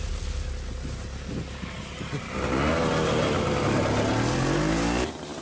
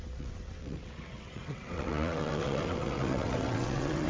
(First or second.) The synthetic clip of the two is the second